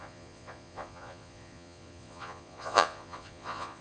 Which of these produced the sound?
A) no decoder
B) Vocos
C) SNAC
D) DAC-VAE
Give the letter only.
B